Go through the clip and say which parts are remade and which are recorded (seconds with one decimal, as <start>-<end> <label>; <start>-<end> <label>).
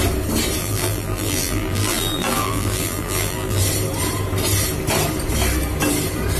0.0-0.6 recorded; 0.6-3.6 remade; 3.6-6.4 recorded